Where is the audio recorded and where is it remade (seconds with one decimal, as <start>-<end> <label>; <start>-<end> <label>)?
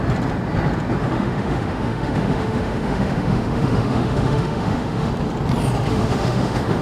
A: 0.0-1.0 recorded; 1.0-5.1 remade; 5.1-5.9 recorded; 5.9-6.8 remade